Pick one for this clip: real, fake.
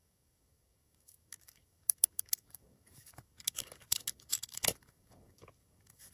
fake